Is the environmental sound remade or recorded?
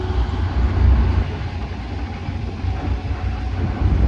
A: recorded